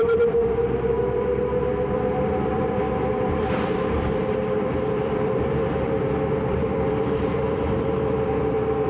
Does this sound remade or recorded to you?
remade